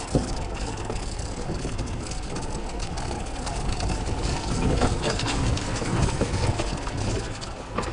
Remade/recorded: remade